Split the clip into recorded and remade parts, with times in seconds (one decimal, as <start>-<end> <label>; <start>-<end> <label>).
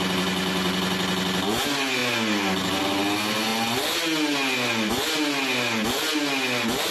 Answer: 0.0-6.9 recorded